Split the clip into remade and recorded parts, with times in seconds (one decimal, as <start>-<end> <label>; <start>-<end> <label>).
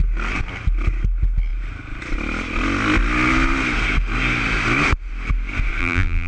0.0-5.8 recorded; 5.8-6.3 remade